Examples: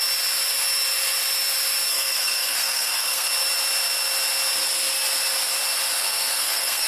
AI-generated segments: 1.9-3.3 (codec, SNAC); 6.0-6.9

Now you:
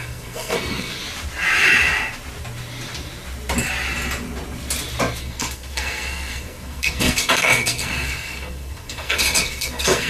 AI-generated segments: 0.0-1.0 (codec, SNAC); 5.2-10.1

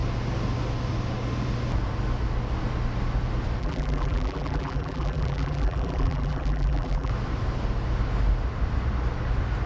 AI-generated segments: 3.6-7.1 (vocoder, BigVGAN v2)